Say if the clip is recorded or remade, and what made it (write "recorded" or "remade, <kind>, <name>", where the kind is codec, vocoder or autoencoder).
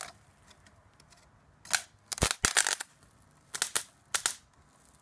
recorded